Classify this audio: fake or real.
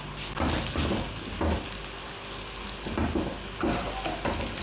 real